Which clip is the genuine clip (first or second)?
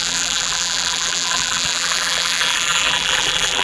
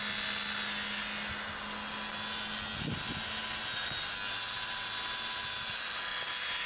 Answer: second